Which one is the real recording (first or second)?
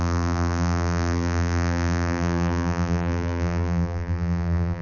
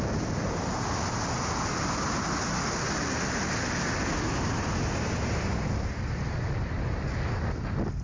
second